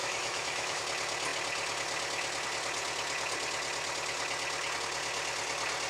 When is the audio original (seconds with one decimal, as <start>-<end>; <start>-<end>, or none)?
0.8-5.9